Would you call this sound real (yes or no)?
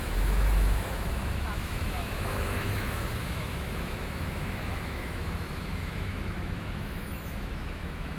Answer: no